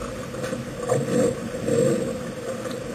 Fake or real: real